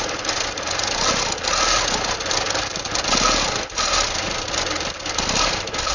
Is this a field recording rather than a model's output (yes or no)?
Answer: yes